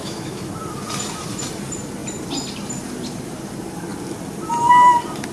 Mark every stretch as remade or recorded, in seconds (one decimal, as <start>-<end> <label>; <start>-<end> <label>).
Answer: 0.0-0.5 remade; 0.5-5.3 recorded